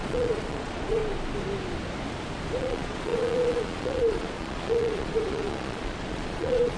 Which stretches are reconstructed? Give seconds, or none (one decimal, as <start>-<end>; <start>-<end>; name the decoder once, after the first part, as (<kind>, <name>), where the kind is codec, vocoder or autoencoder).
0.0-1.0 (vocoder, Vocos); 2.6-6.8